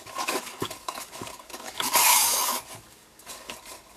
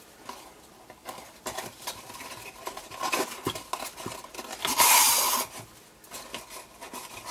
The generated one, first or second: first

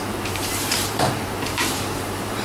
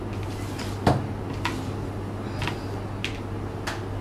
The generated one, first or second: first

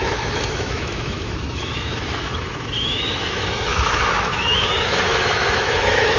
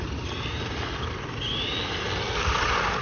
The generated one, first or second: first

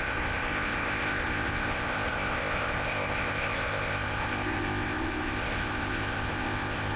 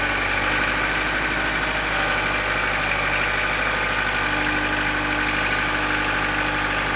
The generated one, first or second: first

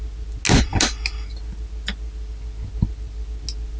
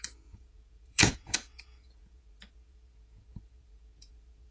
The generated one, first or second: second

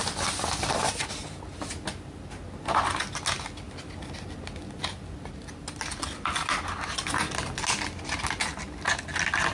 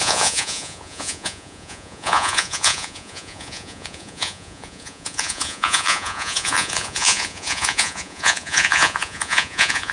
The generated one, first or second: second